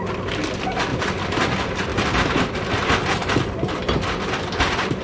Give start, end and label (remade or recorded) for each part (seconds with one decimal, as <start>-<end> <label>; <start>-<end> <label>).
0.0-0.9 recorded; 0.9-1.5 remade; 1.5-1.9 recorded; 1.9-2.9 remade; 2.9-3.8 recorded; 3.8-5.0 remade